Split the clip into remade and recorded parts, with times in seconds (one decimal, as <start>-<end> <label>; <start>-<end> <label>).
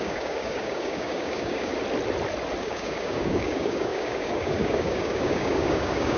0.0-1.7 remade; 1.7-2.6 recorded; 2.6-6.2 remade